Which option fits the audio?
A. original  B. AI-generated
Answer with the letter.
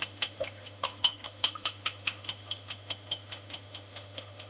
B